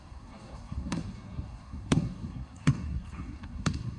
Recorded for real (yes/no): no